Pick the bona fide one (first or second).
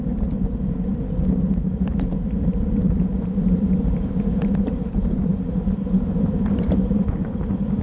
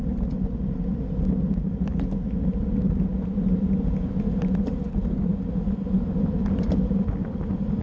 second